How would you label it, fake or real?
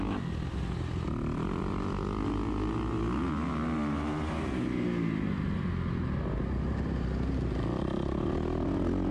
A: real